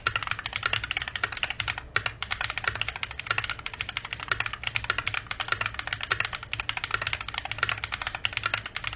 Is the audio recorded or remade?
recorded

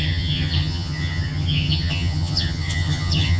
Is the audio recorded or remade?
remade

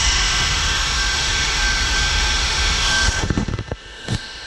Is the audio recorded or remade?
remade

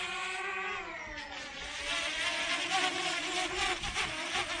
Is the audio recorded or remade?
recorded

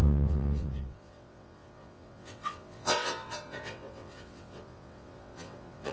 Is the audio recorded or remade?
remade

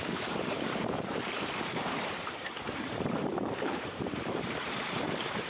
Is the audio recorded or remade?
remade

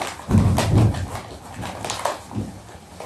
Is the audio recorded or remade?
recorded